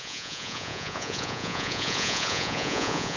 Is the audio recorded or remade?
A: remade